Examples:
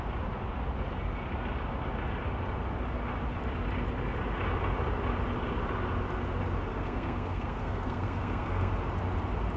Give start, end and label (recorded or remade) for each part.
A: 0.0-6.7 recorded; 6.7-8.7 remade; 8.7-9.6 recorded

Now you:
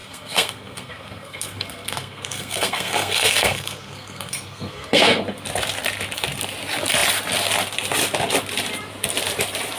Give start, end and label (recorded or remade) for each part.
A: 0.0-5.2 remade; 5.2-9.8 recorded

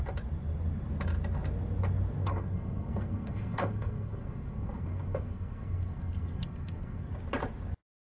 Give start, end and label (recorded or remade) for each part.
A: 0.0-2.2 recorded; 2.2-7.1 remade; 7.1-8.1 recorded

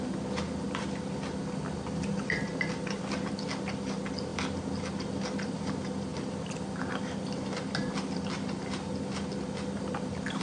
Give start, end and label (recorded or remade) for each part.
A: 0.0-10.4 recorded

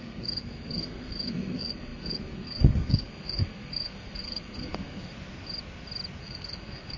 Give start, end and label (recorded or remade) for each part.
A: 0.0-5.1 remade; 5.1-6.2 recorded; 6.2-7.0 remade

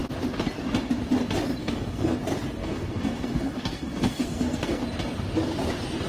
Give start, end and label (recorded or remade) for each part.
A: 0.0-1.6 recorded; 1.6-2.2 remade; 2.2-2.6 recorded; 2.6-4.8 remade; 4.8-6.1 recorded